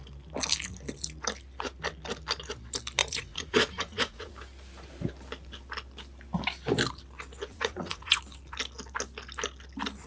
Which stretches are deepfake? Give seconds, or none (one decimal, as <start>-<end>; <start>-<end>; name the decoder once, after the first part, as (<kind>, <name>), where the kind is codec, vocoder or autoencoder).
3.0-4.3 (vocoder, Vocos); 7.5-8.2